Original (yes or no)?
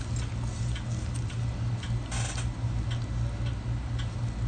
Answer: yes